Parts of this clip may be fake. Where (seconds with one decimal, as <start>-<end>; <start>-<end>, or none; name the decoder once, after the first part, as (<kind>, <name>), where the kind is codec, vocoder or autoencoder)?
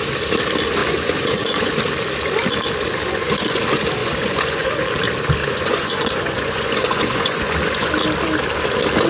0.8-1.7 (vocoder, Vocos); 3.1-3.6; 4.0-4.7; 5.4-7.9